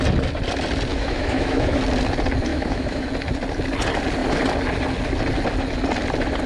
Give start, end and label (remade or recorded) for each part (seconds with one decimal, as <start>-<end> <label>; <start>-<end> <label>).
0.0-0.9 recorded; 0.9-1.8 remade; 1.8-2.5 recorded; 2.5-3.1 remade; 3.1-6.5 recorded